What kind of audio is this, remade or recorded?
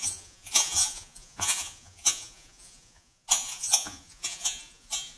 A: remade